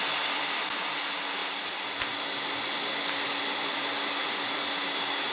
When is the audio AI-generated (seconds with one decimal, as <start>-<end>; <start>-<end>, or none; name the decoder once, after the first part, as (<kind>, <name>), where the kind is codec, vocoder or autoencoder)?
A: none